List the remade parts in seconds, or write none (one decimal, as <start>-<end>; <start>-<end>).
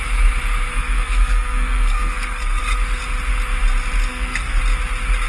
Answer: 0.7-2.6; 4.1-4.6